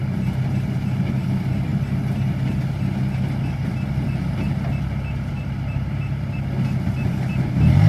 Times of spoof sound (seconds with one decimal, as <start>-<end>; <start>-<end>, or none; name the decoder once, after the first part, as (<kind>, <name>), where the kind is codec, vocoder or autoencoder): none